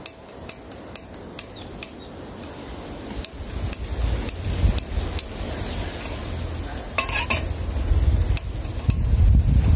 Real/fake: real